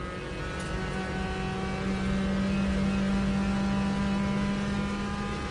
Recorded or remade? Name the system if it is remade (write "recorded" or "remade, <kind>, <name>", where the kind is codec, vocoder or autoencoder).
recorded